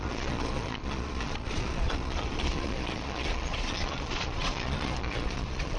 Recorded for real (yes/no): no